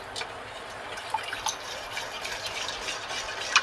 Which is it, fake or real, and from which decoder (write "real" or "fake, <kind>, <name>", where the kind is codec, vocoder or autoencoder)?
real